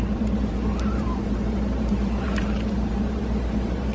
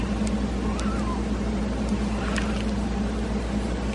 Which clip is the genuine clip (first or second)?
second